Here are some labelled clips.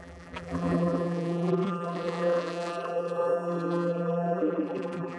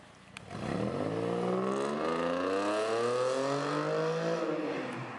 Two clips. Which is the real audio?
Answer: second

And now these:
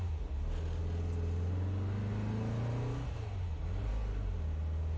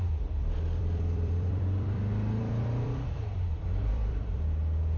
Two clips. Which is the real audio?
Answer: first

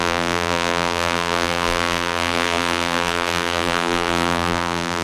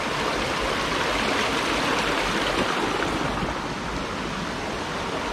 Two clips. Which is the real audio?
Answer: second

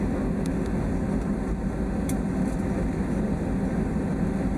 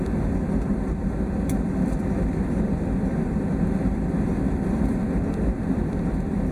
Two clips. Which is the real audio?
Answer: first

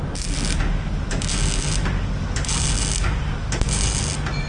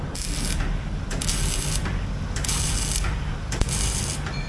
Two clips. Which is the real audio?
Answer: first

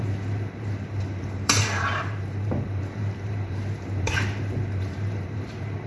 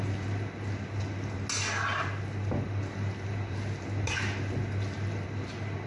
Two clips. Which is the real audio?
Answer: second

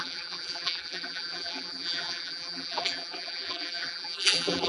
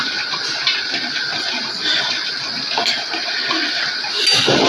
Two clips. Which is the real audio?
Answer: second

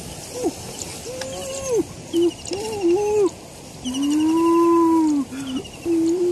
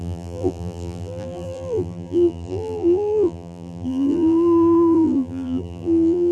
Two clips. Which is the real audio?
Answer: first